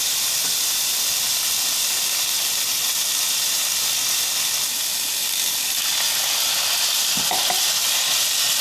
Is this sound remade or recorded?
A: recorded